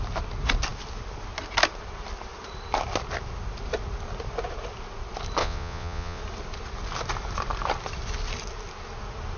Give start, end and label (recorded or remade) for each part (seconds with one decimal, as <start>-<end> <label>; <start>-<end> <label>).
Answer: 0.0-5.4 recorded; 5.4-6.2 remade; 6.2-9.4 recorded